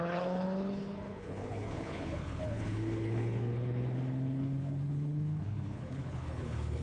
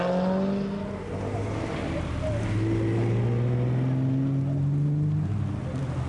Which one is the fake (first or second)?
first